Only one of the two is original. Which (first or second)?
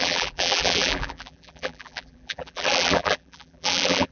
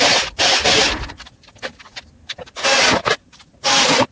second